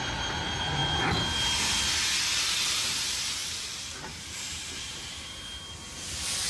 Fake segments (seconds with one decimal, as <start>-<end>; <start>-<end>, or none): 3.4-5.4